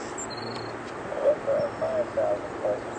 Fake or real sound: fake